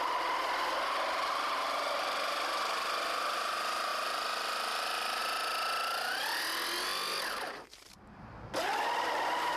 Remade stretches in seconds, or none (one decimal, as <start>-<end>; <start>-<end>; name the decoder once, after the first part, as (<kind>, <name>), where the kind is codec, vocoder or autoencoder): none